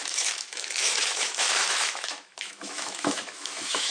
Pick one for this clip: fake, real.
fake